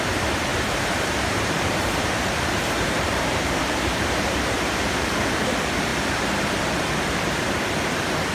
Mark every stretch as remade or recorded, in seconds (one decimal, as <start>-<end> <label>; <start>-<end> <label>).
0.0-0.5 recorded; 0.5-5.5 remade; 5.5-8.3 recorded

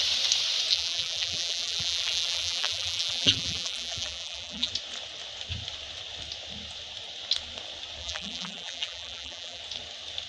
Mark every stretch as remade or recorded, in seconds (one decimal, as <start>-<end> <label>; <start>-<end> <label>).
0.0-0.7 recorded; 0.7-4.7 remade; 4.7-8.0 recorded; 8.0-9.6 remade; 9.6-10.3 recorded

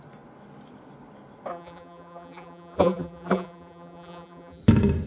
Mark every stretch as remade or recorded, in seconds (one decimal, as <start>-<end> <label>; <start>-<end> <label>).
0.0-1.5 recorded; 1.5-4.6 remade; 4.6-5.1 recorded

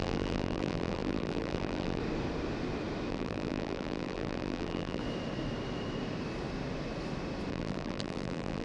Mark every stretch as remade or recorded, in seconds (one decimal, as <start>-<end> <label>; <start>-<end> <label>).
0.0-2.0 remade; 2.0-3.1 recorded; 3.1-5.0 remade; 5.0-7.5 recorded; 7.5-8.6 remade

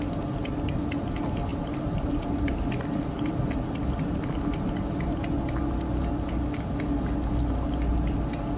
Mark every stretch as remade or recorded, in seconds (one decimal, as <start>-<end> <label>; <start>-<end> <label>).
0.0-1.5 recorded; 1.5-2.7 remade; 2.7-8.6 recorded

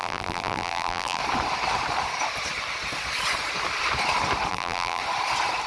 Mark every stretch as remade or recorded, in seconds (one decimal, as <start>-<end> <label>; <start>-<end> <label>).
0.0-1.2 remade; 1.2-4.5 recorded; 4.5-5.0 remade; 5.0-5.7 recorded

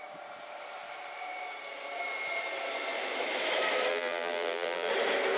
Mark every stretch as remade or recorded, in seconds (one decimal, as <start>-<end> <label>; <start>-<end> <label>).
0.0-3.9 recorded; 3.9-4.9 remade; 4.9-5.4 recorded

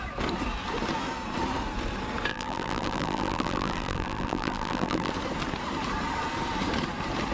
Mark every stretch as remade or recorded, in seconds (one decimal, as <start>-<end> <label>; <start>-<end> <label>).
0.0-2.3 recorded; 2.3-5.1 remade; 5.1-7.3 recorded